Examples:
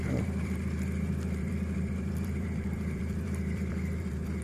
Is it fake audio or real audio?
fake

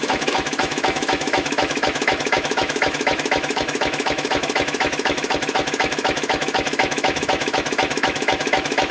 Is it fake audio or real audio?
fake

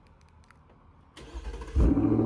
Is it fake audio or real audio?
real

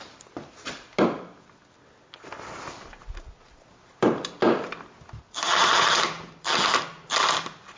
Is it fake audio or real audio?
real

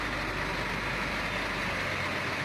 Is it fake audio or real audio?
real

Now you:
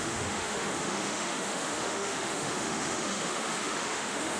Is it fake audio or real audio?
fake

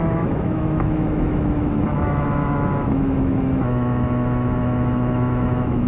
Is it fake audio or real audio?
fake